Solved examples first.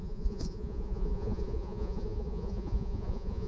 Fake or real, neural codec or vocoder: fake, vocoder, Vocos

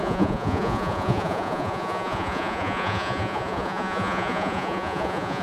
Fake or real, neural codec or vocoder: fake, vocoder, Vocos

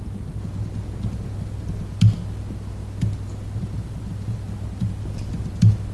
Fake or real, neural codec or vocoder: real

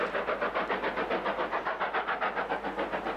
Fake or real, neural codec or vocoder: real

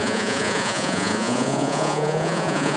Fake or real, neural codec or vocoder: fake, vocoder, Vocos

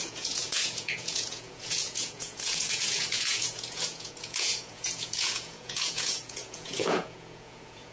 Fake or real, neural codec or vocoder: fake, vocoder, Vocos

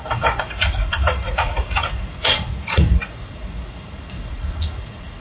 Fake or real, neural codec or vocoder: fake, vocoder, Vocos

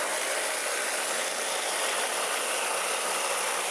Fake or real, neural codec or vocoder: real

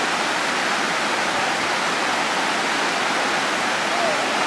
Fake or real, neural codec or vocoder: real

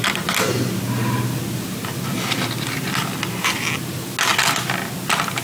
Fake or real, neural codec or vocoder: real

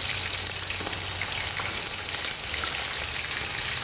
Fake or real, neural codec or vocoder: real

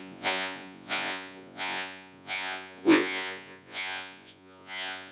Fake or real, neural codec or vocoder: fake, vocoder, Vocos